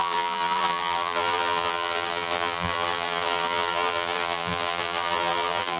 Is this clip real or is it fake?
fake